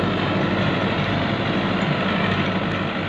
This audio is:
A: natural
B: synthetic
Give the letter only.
A